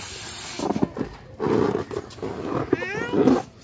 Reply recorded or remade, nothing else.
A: recorded